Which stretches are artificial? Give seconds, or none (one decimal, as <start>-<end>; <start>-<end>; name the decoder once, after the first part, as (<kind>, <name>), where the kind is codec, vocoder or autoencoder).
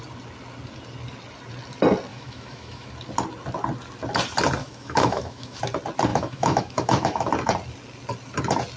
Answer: 2.1-2.9 (autoencoder, DAC-VAE); 4.6-5.6; 6.1-7.3